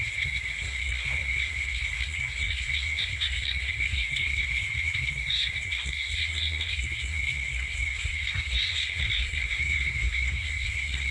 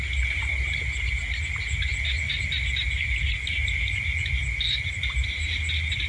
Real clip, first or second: second